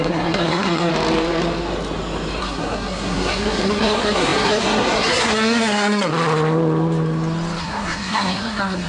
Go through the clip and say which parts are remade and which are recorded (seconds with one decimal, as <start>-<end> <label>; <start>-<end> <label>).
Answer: 0.0-0.9 remade; 0.9-2.4 recorded; 2.4-6.1 remade; 6.1-7.6 recorded; 7.6-8.9 remade